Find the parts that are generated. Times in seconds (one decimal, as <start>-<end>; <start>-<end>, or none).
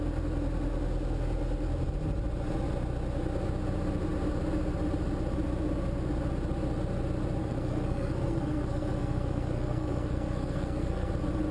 7.4-11.1